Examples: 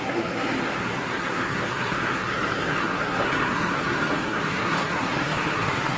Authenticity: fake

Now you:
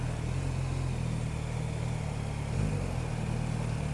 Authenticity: real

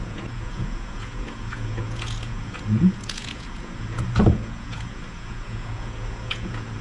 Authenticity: fake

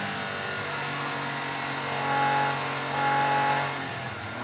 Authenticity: real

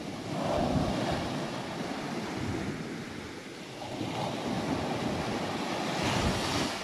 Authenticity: real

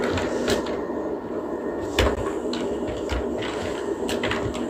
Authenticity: real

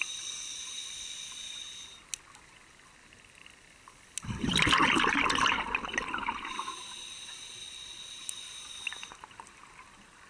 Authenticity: real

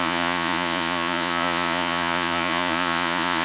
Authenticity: fake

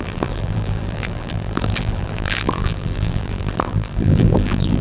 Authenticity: fake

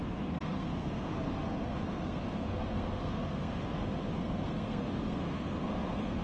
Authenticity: fake